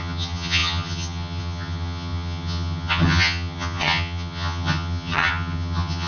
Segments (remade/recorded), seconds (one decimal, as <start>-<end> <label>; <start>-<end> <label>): 0.0-6.1 remade